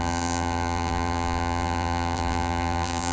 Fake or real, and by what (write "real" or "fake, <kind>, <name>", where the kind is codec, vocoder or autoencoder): fake, vocoder, BigVGAN v2